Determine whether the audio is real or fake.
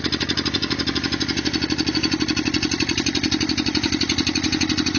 real